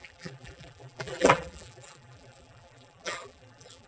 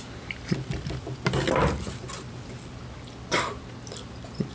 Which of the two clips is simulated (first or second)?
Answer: first